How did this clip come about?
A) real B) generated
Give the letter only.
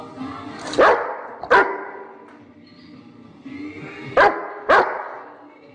A